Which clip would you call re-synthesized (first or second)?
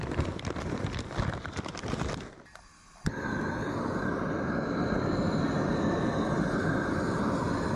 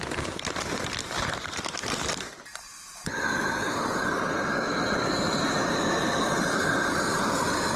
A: second